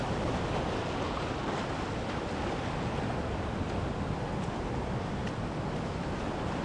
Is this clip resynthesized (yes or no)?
no